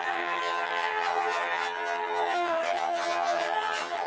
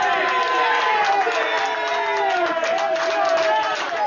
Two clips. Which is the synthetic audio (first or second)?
first